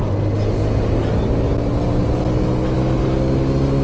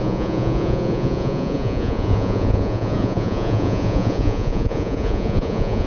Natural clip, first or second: first